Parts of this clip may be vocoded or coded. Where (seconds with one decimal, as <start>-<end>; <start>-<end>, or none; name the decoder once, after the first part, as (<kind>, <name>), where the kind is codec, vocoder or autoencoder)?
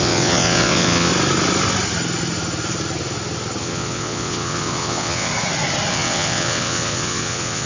0.0-1.1 (vocoder, WaveNeXt); 3.6-5.3; 5.9-7.7